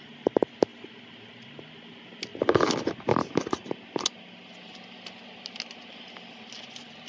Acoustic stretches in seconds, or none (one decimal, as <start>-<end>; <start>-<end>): 0.0-7.1